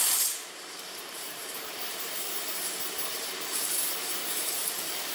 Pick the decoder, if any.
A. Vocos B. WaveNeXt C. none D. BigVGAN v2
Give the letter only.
D